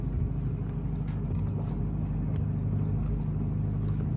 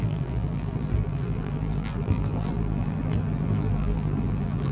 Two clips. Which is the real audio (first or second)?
first